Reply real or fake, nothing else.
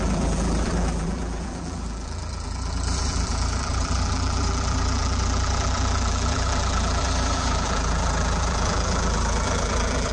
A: fake